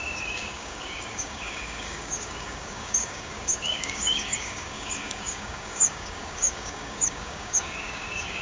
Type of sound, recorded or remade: remade